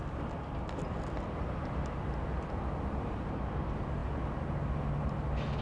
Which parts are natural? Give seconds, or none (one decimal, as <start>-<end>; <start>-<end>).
0.0-5.6